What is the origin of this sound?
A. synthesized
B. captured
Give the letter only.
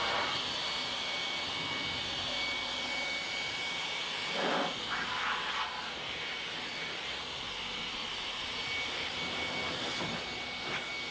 B